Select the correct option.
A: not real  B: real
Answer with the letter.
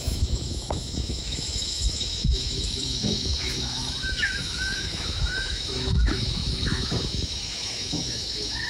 A